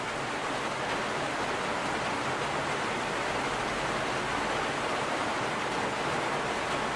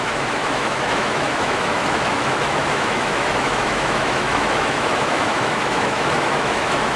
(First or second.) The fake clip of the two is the second